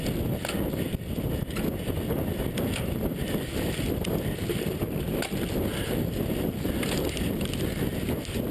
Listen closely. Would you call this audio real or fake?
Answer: real